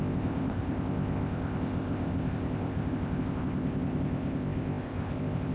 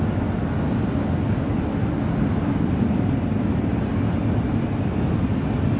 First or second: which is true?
second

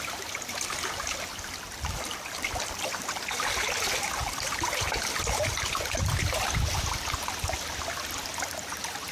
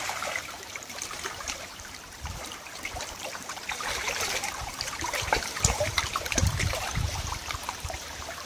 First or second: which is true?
first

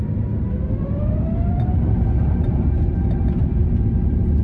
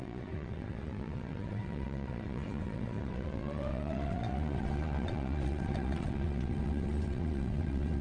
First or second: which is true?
first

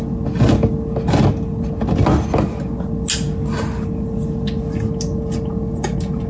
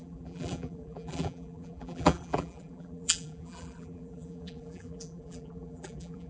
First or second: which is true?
first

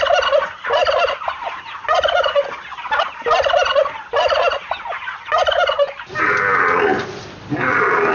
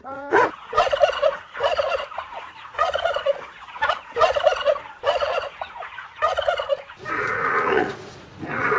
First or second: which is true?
first